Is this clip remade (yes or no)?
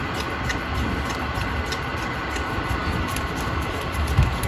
no